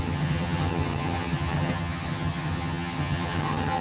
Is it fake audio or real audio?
fake